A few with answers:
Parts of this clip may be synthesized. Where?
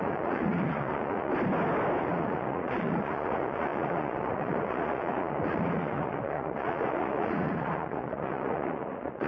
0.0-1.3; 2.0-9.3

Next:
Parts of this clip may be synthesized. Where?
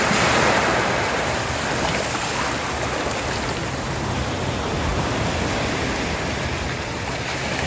none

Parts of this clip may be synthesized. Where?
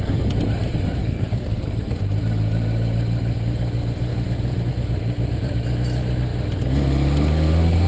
1.0-2.0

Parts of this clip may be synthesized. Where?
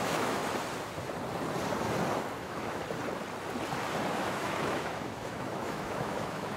0.0-0.4; 2.4-2.8; 4.1-6.6